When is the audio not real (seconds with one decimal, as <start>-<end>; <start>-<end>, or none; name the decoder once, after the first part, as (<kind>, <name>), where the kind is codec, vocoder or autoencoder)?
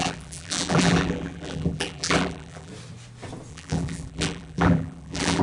0.0-2.7 (vocoder, BigVGAN v2); 3.5-5.4